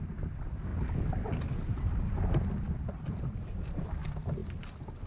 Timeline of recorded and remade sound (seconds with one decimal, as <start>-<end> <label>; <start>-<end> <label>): 0.0-5.1 recorded